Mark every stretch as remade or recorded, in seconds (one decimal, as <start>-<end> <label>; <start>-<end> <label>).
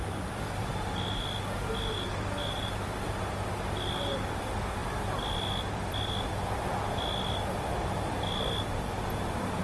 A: 0.0-9.6 recorded